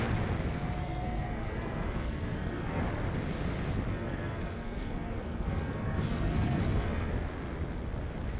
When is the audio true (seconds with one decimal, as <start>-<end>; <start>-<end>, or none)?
0.0-0.8; 2.8-3.9; 7.1-8.4